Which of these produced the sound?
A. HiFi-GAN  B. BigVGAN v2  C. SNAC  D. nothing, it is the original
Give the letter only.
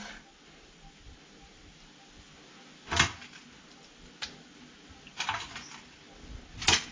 D